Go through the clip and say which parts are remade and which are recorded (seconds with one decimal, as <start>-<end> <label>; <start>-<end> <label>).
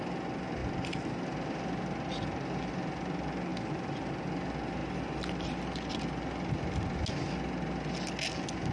0.0-3.5 recorded; 3.5-4.1 remade; 4.1-4.8 recorded; 4.8-5.9 remade; 5.9-8.7 recorded